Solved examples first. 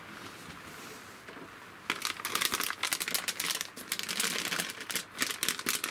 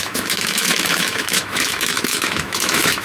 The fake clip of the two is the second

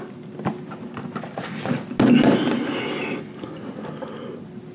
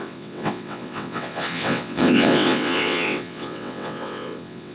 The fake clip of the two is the second